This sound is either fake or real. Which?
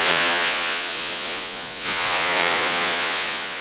fake